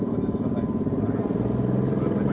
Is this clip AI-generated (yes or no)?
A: no